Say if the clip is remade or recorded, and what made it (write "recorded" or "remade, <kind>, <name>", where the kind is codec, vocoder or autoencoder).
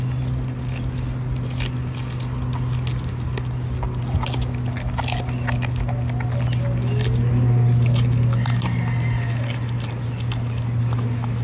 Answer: recorded